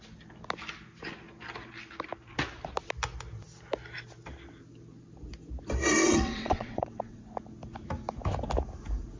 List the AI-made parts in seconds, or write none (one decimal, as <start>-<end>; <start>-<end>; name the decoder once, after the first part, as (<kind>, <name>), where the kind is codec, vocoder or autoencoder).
6.0-7.2 (vocoder, WaveNeXt)